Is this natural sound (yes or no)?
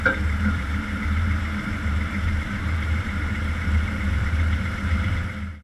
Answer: no